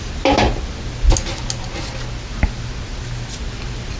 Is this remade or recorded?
recorded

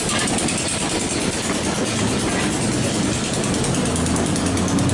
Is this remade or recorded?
recorded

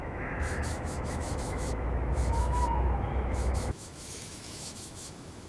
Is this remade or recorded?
remade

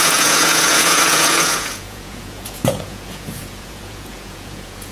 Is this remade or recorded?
remade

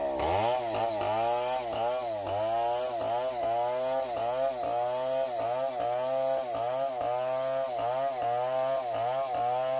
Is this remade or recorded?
recorded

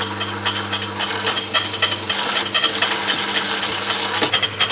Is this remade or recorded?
recorded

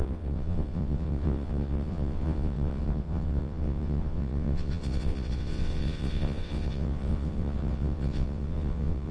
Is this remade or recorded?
remade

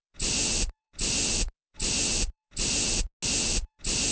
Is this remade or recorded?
recorded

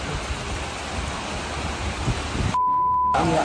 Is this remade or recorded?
recorded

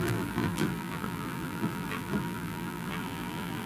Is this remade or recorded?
remade